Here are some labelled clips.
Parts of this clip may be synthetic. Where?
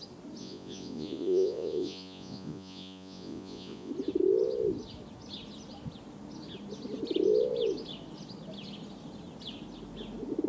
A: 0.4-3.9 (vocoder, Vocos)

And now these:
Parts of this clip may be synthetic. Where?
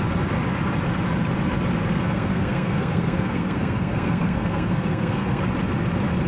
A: 1.9-5.4 (codec, SNAC)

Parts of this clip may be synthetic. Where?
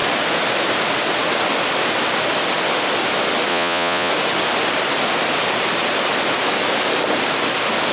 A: 3.5-4.1 (vocoder, Vocos)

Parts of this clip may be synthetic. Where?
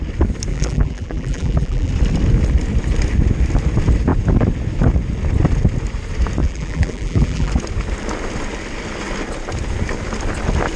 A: 0.5-1.9 (vocoder, BigVGAN v2); 6.4-7.5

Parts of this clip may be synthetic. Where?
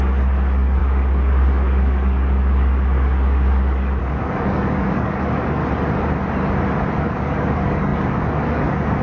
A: 0.0-5.6 (codec, DAC); 7.0-9.0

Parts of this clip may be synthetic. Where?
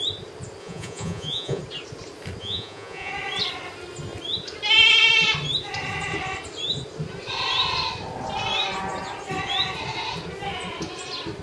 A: 0.6-1.6 (vocoder, Vocos); 2.4-3.1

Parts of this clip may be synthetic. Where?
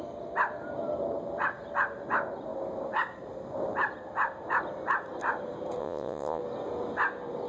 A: 5.8-6.4 (vocoder, Vocos)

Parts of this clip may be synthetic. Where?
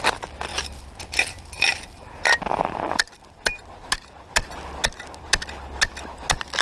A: none